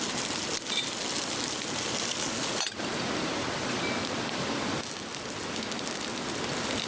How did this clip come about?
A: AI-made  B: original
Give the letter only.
B